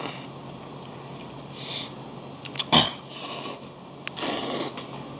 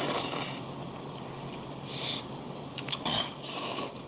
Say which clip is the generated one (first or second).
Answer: second